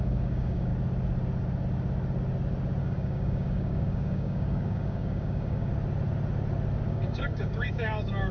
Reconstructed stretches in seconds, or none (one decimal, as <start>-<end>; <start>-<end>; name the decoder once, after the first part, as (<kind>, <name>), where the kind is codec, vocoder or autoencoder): 0.0-0.7 (codec, DAC); 2.8-5.7; 6.9-8.3